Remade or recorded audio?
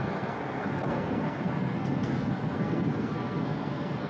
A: remade